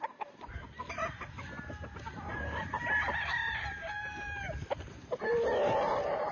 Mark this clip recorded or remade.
recorded